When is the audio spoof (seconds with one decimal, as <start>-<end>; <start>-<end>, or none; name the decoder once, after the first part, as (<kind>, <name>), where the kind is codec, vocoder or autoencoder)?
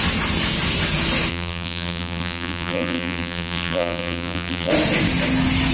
1.3-4.7 (vocoder, BigVGAN v2)